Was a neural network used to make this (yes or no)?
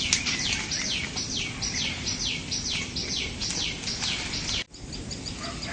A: no